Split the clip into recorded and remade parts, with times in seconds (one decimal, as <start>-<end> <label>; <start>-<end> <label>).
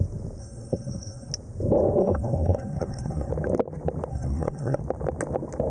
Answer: 0.0-0.4 recorded; 0.4-1.3 remade; 1.3-2.0 recorded; 2.0-3.3 remade; 3.3-4.1 recorded; 4.1-4.8 remade; 4.8-5.7 recorded